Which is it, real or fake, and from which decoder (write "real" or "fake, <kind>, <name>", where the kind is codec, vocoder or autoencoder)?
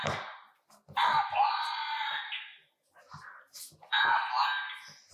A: real